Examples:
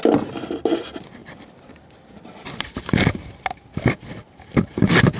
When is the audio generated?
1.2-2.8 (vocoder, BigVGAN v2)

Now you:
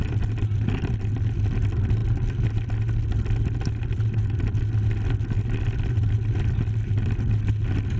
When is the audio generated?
none

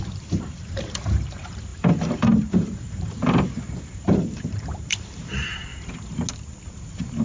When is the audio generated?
0.0-5.7 (vocoder, BigVGAN v2)

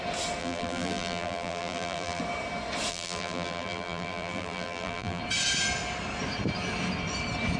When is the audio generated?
0.4-2.2 (vocoder, BigVGAN v2); 2.9-5.2

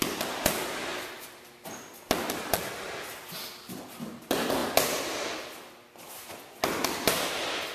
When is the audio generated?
none

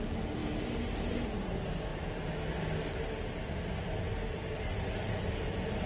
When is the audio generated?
none

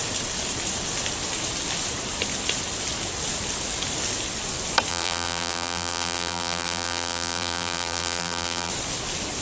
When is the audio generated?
4.9-8.7 (vocoder, BigVGAN v2)

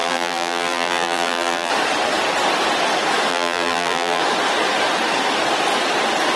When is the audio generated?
0.0-1.7 (vocoder, BigVGAN v2); 3.3-4.2